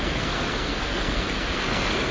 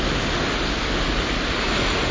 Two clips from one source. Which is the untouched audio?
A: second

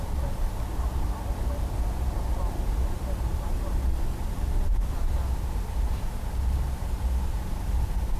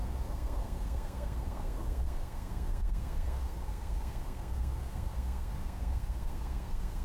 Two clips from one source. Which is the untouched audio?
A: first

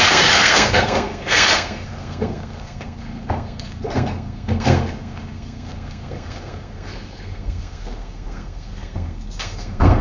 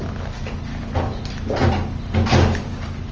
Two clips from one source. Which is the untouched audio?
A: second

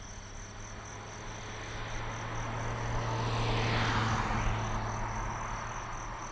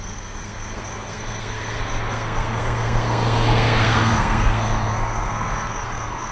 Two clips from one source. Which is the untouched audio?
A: first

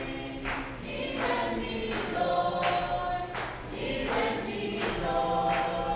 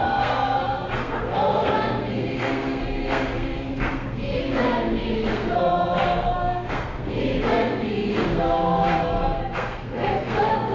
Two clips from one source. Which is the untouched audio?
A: first